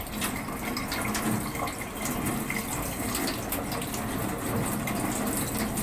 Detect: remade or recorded recorded